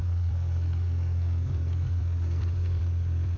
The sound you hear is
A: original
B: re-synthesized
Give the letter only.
B